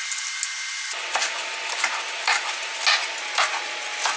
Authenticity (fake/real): real